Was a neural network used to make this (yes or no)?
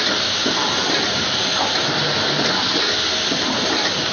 no